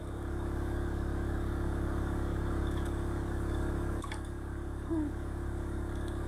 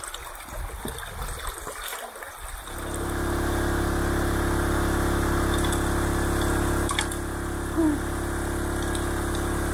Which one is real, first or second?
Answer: second